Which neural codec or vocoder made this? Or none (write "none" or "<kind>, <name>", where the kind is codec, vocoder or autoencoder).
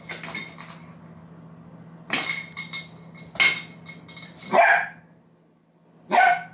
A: none